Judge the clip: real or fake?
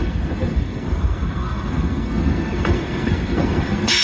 fake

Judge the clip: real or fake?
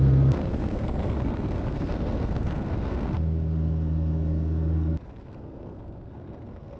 fake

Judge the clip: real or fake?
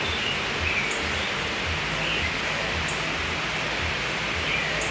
real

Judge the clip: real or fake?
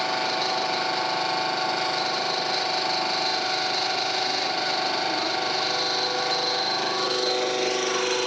real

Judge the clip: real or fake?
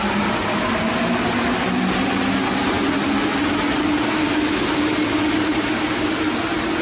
real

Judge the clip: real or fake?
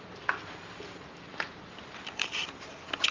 real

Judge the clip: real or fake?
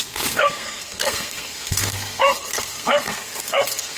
fake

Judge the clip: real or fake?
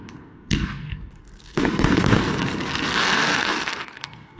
fake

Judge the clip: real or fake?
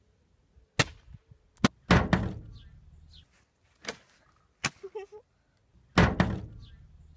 real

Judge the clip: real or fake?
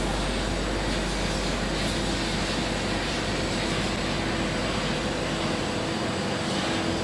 real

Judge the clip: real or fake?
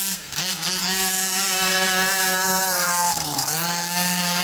fake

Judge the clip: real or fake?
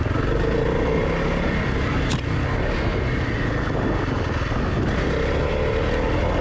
real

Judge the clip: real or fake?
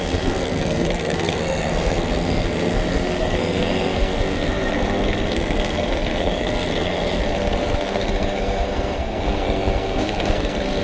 fake